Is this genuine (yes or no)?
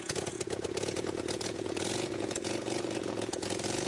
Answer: no